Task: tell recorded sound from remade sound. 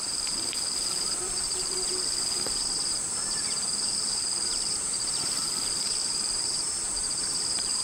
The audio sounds remade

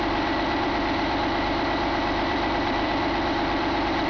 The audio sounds remade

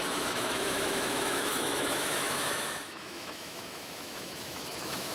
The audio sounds remade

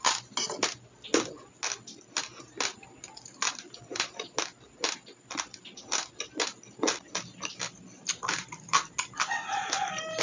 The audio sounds recorded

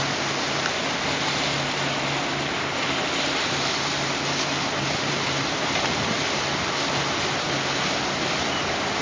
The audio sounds recorded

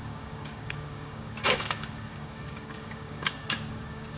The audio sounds remade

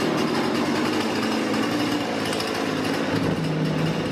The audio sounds recorded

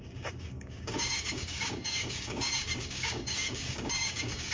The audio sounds remade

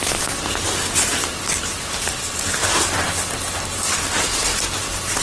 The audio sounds recorded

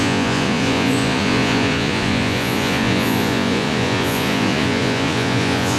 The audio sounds remade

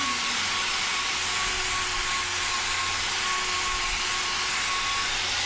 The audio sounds recorded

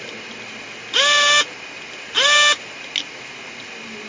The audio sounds recorded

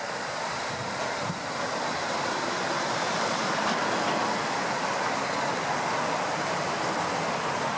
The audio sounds remade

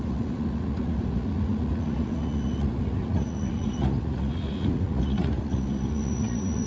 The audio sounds remade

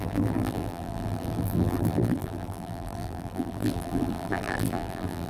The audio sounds remade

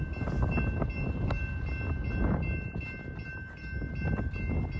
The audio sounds recorded